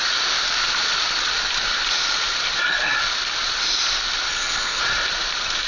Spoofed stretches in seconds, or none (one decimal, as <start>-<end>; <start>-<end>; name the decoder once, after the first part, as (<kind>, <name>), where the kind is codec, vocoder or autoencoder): 4.3-4.8 (codec, HILCodec)

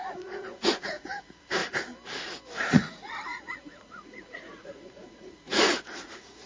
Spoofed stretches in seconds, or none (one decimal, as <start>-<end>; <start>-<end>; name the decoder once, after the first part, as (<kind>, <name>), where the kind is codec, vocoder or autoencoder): 0.0-1.6 (vocoder, Vocos); 2.6-6.5

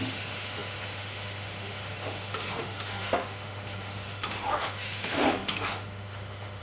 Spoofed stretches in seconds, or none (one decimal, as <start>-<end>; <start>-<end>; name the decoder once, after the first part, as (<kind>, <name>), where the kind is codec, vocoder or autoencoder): 0.0-6.6 (autoencoder, DAC-VAE)

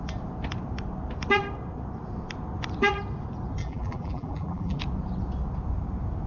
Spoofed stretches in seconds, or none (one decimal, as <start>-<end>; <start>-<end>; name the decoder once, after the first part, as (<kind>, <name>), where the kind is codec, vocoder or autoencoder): 3.6-4.8 (vocoder, BigVGAN v2)

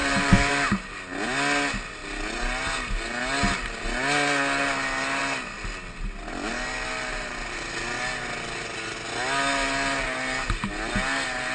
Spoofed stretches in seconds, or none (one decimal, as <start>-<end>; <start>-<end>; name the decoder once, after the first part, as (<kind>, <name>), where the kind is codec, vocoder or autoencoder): 0.0-0.5 (vocoder, BigVGAN v2); 7.1-7.6

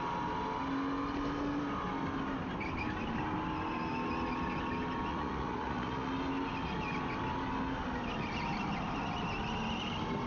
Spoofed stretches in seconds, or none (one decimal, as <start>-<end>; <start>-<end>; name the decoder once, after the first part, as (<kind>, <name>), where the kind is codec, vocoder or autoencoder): 5.1-6.1 (vocoder, Vocos)

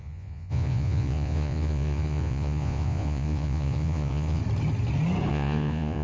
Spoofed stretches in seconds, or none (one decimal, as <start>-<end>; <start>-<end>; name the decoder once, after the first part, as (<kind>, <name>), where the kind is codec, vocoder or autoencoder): 0.0-4.4 (vocoder, Vocos); 5.3-6.0